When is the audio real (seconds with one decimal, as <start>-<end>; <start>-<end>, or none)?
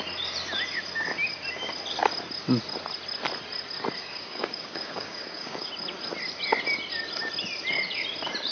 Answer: 0.0-4.0; 5.7-8.5